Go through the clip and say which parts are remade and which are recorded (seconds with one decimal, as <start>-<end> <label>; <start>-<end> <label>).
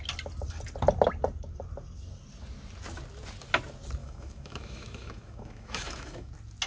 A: 0.0-4.0 recorded; 4.0-6.3 remade; 6.3-6.7 recorded